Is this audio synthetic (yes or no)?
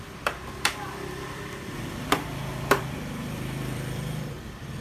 yes